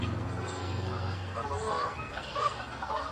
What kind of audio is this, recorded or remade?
remade